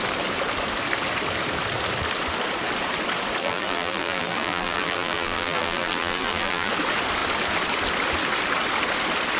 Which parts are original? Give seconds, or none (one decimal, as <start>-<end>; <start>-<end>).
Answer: 0.0-3.4; 6.7-9.4